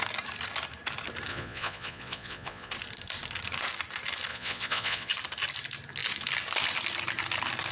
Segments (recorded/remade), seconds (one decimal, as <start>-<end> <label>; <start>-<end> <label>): 0.0-1.3 recorded; 1.3-2.7 remade; 2.7-4.3 recorded; 4.3-5.1 remade; 5.1-7.7 recorded